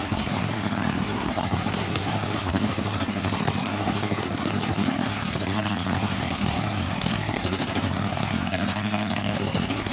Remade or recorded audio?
remade